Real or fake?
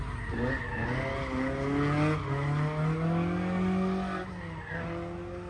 real